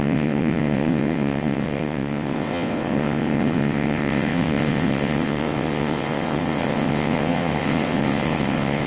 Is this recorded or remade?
remade